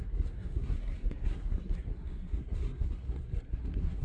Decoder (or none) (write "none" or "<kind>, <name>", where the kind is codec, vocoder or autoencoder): codec, SNAC